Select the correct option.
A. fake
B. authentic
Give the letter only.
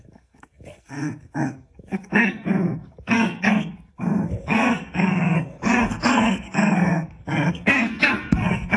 A